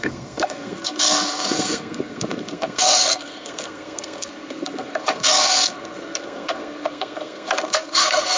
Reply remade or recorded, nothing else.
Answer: remade